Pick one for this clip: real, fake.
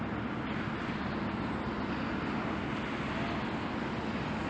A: real